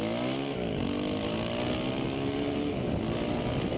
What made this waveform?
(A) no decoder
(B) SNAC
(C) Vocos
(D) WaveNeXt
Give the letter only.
A